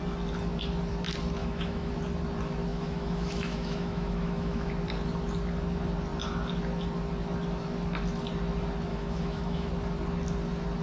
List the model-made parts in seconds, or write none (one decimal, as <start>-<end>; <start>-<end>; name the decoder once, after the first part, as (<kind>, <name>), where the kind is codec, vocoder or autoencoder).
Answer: 1.4-1.9 (autoencoder, DAC-VAE); 2.7-4.7; 8.9-9.7